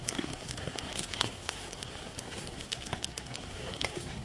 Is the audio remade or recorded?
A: remade